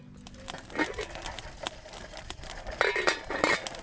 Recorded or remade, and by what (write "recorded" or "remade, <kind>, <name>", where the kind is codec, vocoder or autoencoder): recorded